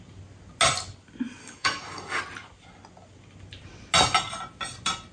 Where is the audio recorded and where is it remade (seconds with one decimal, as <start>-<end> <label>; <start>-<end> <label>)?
0.0-1.4 recorded; 1.4-2.2 remade; 2.2-5.1 recorded

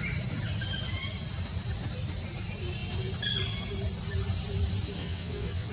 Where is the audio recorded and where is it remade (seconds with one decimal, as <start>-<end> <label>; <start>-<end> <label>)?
0.0-5.0 recorded; 5.0-5.7 remade

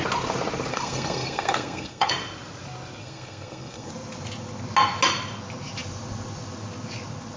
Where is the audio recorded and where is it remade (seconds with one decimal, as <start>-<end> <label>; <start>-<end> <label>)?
0.0-0.7 recorded; 0.7-2.1 remade; 2.1-3.0 recorded; 3.0-3.9 remade; 3.9-7.4 recorded

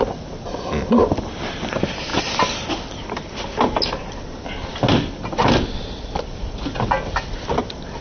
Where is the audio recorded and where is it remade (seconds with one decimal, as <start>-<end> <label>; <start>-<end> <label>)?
0.0-8.0 recorded

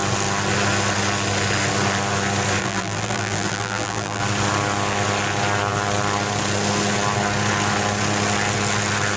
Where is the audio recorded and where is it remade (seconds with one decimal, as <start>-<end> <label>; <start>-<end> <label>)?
0.0-2.6 recorded; 2.6-4.2 remade; 4.2-9.2 recorded

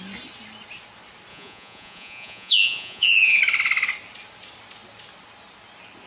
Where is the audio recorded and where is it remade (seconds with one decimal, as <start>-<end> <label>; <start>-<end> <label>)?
0.0-1.3 recorded; 1.3-3.4 remade; 3.4-6.1 recorded

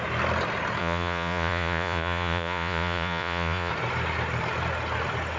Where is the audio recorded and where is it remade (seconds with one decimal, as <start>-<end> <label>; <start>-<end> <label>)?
0.0-0.8 recorded; 0.8-3.7 remade; 3.7-5.4 recorded

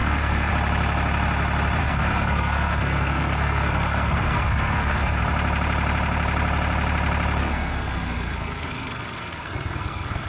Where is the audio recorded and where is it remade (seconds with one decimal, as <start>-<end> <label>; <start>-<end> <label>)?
0.0-0.5 remade; 0.5-1.8 recorded; 1.8-5.2 remade; 5.2-7.4 recorded; 7.4-10.3 remade